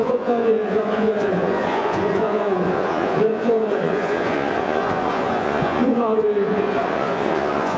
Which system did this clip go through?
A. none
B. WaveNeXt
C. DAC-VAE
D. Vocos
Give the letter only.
D